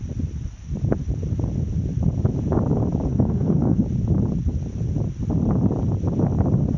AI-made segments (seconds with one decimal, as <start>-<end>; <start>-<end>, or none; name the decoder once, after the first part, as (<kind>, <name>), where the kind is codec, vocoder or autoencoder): 3.1-3.8 (codec, SNAC)